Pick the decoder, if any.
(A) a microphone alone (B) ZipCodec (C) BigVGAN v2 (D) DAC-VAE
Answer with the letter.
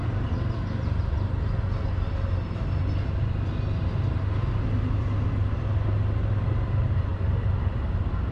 A